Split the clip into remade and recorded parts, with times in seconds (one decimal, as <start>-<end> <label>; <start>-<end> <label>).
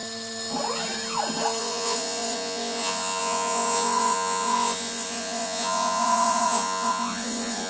0.0-1.6 recorded; 1.6-7.7 remade